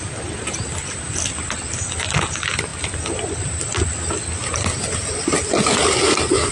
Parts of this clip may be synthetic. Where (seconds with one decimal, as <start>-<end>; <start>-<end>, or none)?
none